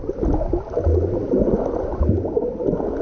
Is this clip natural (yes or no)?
yes